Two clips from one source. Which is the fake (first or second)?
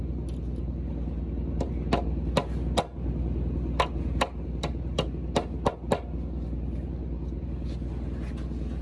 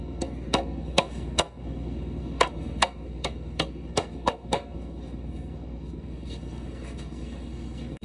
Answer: second